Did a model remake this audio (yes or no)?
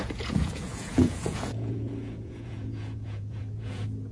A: yes